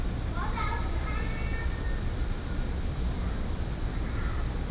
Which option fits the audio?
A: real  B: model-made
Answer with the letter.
B